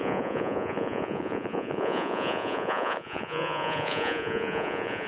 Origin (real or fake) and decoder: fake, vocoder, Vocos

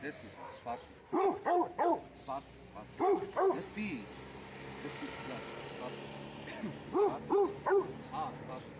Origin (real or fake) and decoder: real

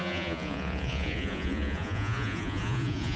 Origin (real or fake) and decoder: fake, vocoder, Vocos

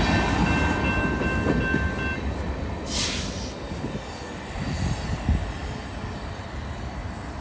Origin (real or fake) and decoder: real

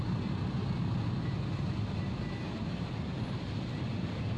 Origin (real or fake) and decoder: real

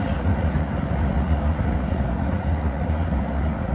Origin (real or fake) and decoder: fake, vocoder, Vocos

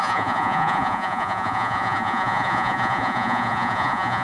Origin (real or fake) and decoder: fake, vocoder, Vocos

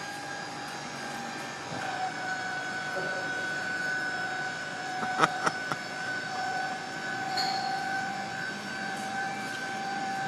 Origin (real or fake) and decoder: fake, vocoder, Vocos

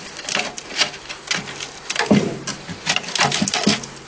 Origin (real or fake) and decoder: real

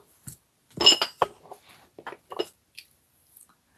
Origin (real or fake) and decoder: real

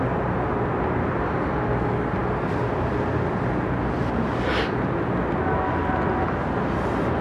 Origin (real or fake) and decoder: real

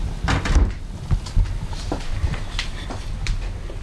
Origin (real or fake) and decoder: real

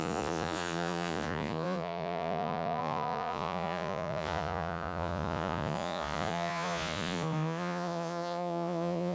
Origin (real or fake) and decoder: fake, vocoder, Vocos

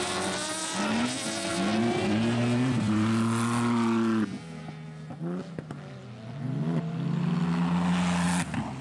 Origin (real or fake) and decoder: real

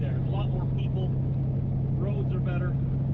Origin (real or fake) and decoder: real